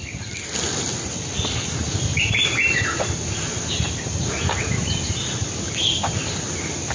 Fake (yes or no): no